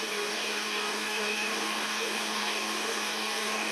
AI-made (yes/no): yes